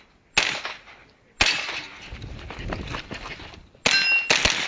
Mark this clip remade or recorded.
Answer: recorded